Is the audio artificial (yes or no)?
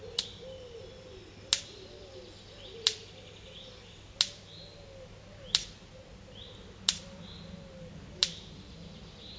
no